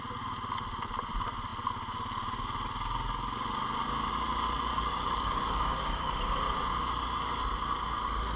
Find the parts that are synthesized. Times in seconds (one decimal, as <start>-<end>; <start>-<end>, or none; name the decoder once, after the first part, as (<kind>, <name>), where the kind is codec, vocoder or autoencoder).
4.7-6.1 (codec, DAC)